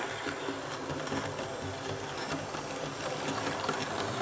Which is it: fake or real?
real